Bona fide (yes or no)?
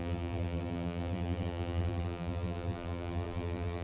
no